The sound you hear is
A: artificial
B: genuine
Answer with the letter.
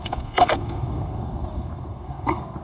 A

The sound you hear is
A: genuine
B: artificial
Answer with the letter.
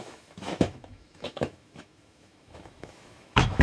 B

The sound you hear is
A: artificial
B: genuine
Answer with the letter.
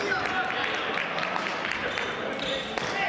B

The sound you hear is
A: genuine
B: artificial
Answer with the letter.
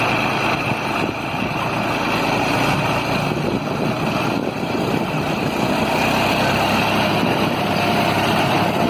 A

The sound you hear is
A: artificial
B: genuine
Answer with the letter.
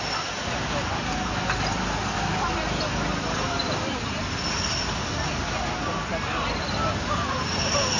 B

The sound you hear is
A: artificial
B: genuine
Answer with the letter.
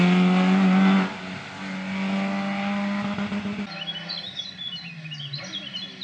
B